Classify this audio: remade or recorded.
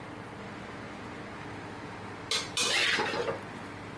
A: recorded